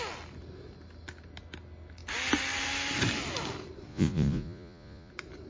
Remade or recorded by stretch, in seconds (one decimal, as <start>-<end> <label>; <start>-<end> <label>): 0.0-3.9 recorded; 3.9-5.1 remade; 5.1-5.5 recorded